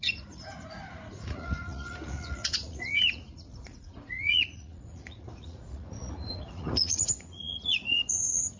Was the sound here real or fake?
fake